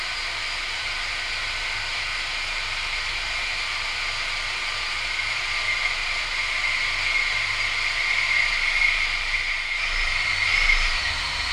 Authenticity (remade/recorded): remade